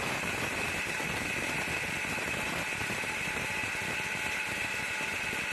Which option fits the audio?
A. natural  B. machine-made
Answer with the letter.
A